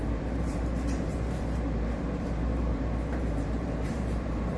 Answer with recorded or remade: remade